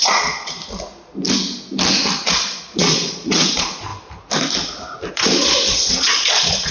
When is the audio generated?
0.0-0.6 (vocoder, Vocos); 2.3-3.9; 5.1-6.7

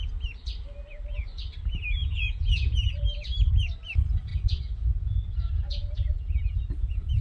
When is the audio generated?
2.0-3.0 (vocoder, Vocos); 4.3-7.2

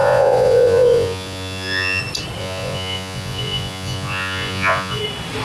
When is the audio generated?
0.0-2.0 (vocoder, Vocos); 2.4-5.0